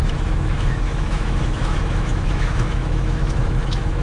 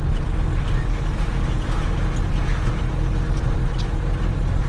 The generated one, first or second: first